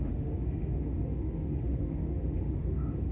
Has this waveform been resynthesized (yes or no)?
yes